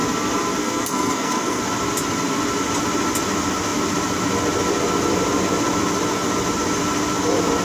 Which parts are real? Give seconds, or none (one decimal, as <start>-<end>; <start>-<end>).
0.0-0.6; 1.6-7.6